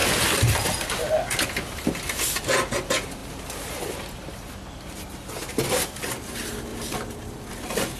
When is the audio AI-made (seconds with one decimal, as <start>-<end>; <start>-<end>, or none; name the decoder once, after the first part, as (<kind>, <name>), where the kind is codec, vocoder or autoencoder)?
6.7-7.5 (vocoder, BigVGAN v2)